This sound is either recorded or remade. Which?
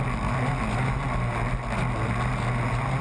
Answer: recorded